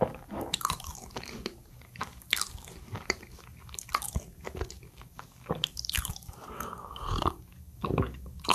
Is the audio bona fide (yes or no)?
no